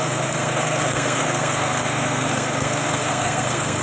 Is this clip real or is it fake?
fake